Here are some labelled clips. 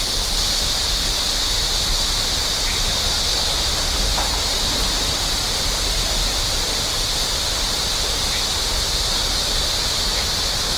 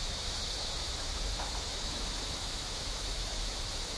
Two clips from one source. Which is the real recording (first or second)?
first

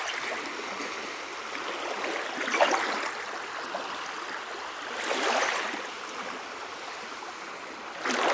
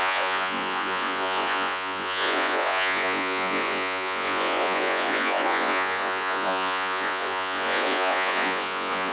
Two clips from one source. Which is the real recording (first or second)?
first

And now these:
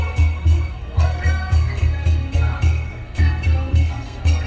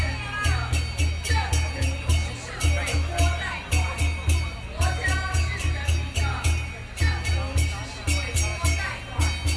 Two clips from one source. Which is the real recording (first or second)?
second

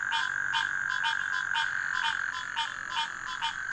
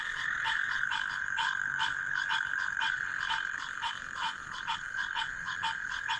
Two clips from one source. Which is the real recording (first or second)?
first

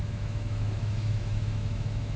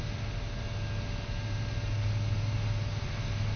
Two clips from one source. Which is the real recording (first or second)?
second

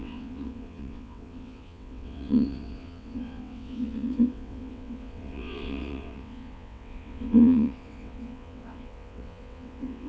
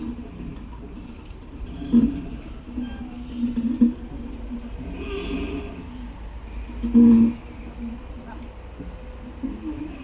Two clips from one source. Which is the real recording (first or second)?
second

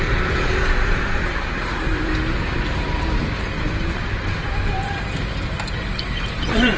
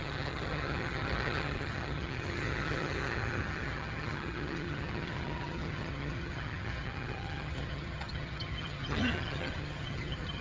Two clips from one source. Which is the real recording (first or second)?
first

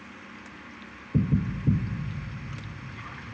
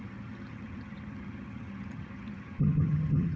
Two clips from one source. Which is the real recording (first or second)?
first